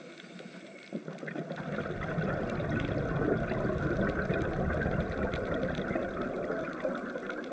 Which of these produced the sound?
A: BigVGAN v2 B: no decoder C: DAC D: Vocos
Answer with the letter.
B